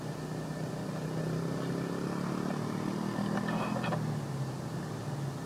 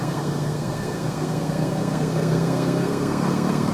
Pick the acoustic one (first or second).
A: first